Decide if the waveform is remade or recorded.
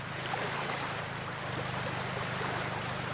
remade